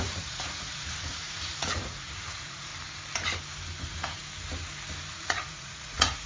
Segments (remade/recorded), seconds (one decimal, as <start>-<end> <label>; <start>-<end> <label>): 0.0-2.7 remade; 2.7-3.8 recorded; 3.8-4.2 remade; 4.2-5.1 recorded; 5.1-6.3 remade